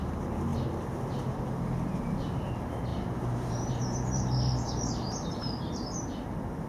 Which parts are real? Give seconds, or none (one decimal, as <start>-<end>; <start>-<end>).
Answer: 0.0-2.9; 5.3-6.7